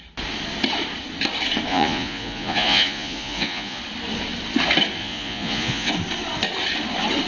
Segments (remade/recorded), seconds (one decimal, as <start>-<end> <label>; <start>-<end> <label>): 0.0-1.7 recorded; 1.7-3.8 remade; 3.8-5.0 recorded; 5.0-5.9 remade; 5.9-7.3 recorded